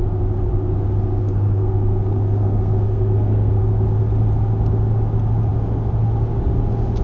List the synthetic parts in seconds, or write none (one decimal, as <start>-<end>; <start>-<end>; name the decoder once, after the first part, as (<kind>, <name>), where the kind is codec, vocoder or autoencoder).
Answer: 1.2-3.6 (codec, SNAC)